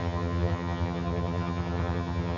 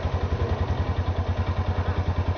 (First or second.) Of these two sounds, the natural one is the second